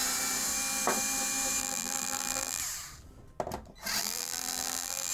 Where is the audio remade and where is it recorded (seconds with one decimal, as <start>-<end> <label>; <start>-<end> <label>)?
0.0-1.6 recorded; 1.6-2.6 remade; 2.6-4.0 recorded; 4.0-5.1 remade